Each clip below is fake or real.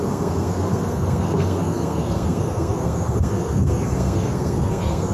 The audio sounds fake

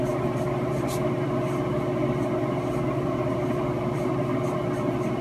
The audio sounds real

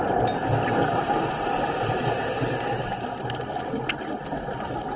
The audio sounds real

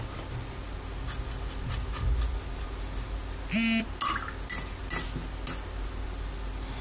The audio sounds real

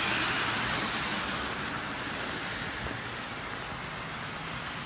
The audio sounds real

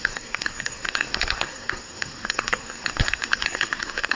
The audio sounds fake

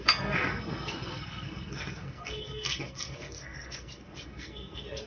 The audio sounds fake